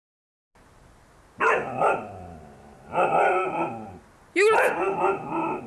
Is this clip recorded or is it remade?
recorded